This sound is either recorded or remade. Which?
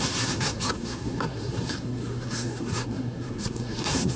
remade